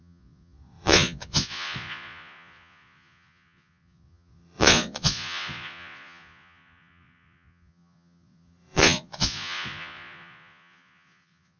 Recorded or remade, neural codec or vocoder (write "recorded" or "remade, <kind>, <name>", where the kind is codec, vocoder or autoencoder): remade, vocoder, Vocos